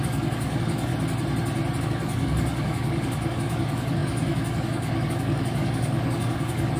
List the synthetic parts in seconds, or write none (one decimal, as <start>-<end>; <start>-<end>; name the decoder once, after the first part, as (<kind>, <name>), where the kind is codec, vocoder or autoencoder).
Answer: 0.0-0.9 (codec, DAC); 1.8-6.8